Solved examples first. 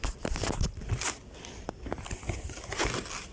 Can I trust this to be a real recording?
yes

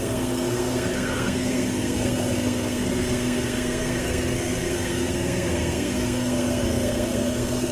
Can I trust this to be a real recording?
no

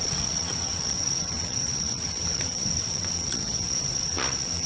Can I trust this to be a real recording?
no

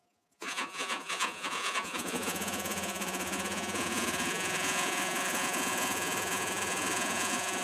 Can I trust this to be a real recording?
no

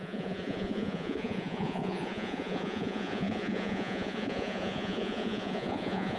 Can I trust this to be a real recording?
no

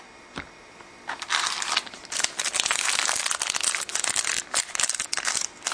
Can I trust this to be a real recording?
yes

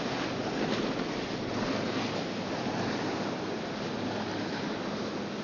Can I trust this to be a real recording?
yes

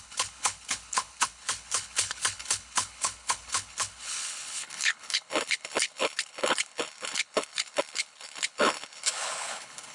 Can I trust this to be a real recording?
no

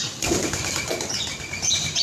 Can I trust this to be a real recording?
yes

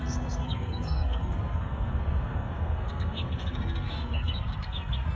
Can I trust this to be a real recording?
no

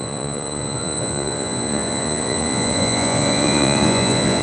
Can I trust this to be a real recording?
no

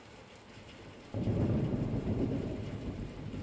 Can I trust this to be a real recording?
no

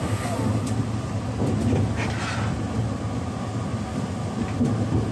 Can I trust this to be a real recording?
yes